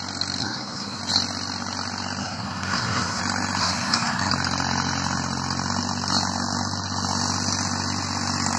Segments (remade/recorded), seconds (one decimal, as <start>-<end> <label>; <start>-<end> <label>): 0.0-0.4 recorded; 0.4-1.0 remade; 1.0-2.2 recorded; 2.2-3.2 remade; 3.2-3.6 recorded; 3.6-4.3 remade; 4.3-8.6 recorded